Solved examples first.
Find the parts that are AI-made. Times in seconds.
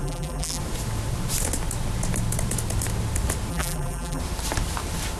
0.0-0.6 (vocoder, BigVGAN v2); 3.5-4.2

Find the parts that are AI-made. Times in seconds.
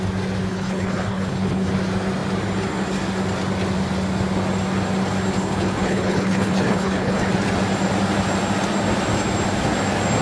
0.5-1.7 (codec, HILCodec); 5.3-7.3